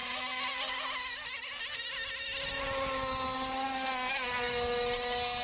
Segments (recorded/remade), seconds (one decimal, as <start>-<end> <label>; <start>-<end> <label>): 0.0-5.4 recorded